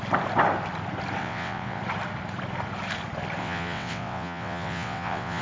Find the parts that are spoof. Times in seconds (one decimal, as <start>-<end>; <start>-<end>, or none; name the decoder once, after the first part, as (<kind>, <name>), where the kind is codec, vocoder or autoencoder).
1.2-1.8 (vocoder, WaveNeXt); 3.4-5.4